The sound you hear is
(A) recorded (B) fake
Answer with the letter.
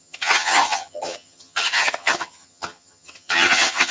B